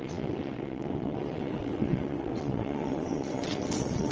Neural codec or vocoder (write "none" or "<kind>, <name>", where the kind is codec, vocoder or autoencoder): vocoder, WaveNeXt